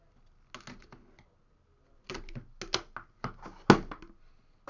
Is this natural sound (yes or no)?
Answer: yes